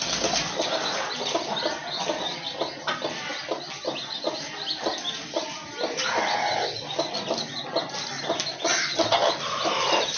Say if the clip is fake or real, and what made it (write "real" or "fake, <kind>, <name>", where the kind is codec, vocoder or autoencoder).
real